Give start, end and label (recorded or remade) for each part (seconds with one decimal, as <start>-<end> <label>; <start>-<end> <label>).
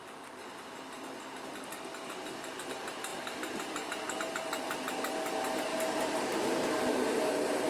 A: 0.0-5.7 recorded; 5.7-7.2 remade; 7.2-7.7 recorded